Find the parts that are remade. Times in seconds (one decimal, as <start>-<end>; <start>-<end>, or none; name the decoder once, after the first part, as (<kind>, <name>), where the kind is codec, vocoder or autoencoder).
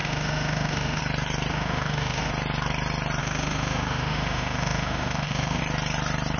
0.0-1.0 (autoencoder, DAC-VAE); 1.5-2.3; 3.2-5.6